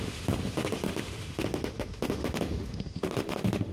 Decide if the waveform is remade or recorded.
remade